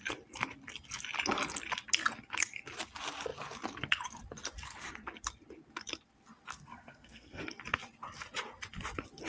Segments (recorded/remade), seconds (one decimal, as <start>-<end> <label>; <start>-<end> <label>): 0.0-6.5 recorded; 6.5-7.4 remade; 7.4-9.3 recorded